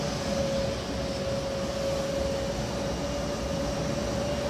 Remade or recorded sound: recorded